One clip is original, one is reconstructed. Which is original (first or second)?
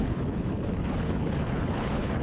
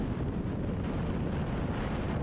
second